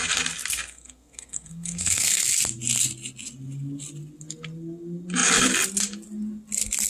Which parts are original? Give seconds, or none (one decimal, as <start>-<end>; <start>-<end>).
0.0-0.5; 2.2-6.9